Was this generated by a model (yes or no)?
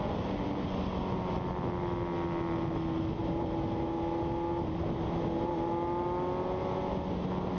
no